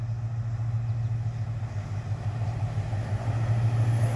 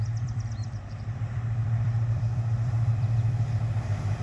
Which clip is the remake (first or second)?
second